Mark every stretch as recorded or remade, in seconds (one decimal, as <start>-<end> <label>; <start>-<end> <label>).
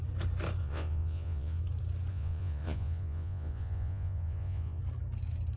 0.0-0.6 recorded; 0.6-1.6 remade; 1.6-2.1 recorded; 2.1-4.8 remade; 4.8-5.6 recorded